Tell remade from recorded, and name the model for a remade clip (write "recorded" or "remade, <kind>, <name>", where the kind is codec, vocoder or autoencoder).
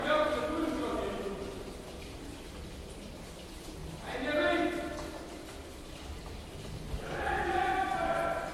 recorded